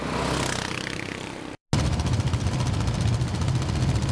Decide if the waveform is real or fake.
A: real